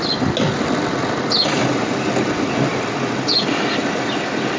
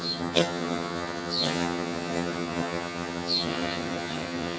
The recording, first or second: first